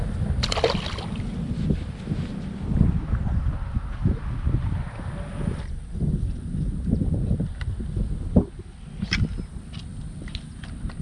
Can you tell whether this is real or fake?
real